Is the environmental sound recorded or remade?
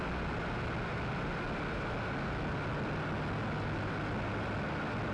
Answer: recorded